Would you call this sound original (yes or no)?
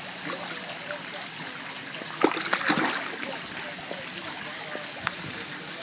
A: yes